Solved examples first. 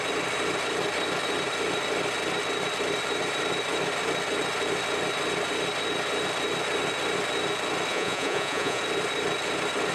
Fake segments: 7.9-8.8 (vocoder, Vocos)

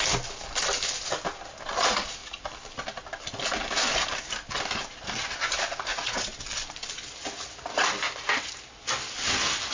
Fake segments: 5.9-6.4 (vocoder, Vocos)

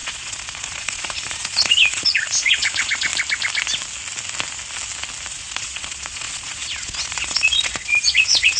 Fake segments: 0.0-3.1 (vocoder, Vocos); 5.3-8.6

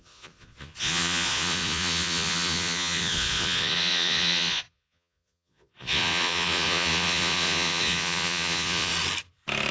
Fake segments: 0.0-8.9 (vocoder, Vocos)

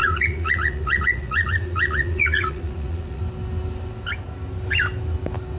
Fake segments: 0.0-3.2 (vocoder, Vocos)

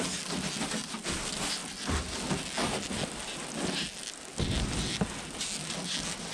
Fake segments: none